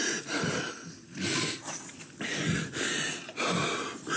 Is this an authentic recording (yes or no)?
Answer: no